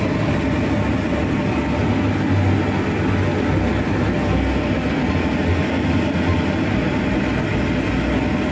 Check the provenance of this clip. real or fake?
real